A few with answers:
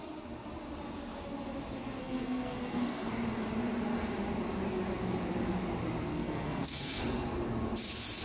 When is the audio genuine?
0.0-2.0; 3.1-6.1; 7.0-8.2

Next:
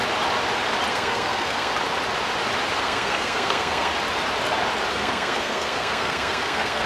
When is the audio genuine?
0.0-0.9; 1.7-2.8; 3.9-4.9

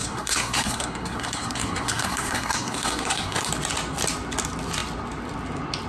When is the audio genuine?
3.5-5.9

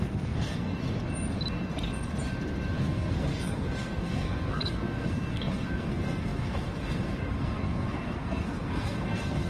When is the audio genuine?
0.7-2.8